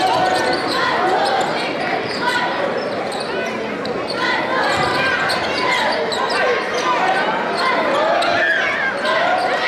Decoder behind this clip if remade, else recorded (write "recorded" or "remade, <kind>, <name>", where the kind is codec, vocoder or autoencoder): recorded